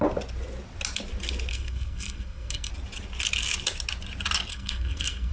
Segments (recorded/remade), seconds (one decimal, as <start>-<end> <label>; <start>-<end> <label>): 0.0-1.5 recorded; 1.5-2.7 remade; 2.7-4.5 recorded; 4.5-5.3 remade